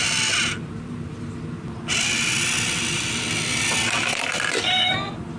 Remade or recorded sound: recorded